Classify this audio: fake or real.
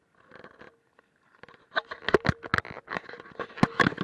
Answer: real